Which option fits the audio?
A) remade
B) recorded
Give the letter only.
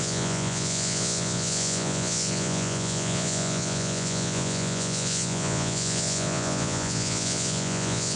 A